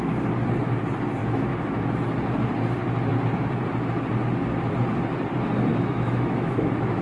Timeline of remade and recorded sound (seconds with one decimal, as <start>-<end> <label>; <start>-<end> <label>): 0.0-1.2 recorded; 1.2-2.0 remade; 2.0-5.7 recorded; 5.7-7.0 remade